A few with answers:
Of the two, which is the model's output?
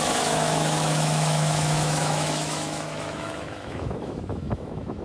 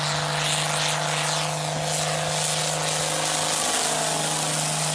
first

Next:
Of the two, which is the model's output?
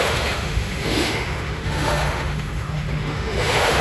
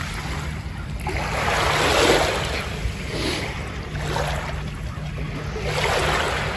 first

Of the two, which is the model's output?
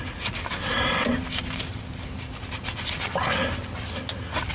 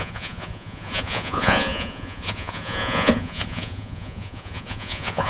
second